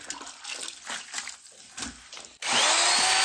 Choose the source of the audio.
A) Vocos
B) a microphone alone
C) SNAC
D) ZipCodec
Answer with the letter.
B